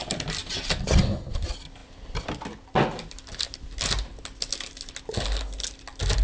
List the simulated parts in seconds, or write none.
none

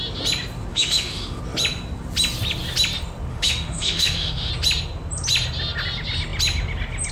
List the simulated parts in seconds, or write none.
0.7-1.4 (autoencoder, DAC-VAE); 3.3-4.5

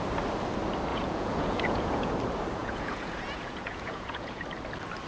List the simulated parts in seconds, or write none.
0.9-2.1 (vocoder, Vocos); 2.6-4.4